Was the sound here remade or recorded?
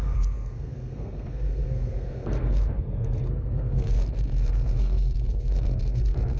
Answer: remade